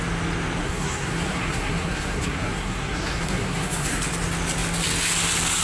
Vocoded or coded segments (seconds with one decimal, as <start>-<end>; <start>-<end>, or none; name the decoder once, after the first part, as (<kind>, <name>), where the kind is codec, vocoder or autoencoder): 0.6-4.0 (codec, SNAC)